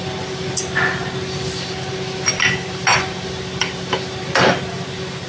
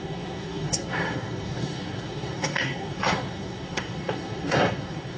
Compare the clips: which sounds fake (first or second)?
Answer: second